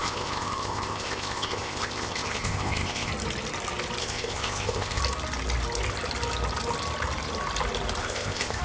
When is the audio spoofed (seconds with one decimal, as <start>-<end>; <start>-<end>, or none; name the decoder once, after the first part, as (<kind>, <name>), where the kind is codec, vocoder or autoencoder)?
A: 0.0-3.1 (codec, ZipCodec); 4.0-5.0; 8.0-8.6